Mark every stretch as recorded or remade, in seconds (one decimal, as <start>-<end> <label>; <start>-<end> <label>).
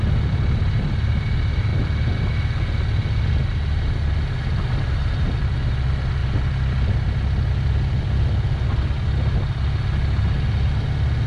0.0-11.3 recorded